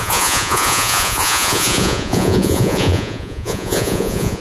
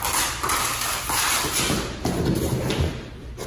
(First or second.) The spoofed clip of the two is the first